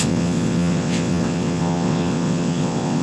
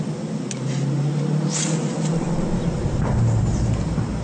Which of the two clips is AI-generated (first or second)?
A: first